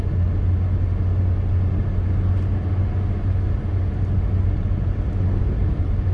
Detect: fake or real real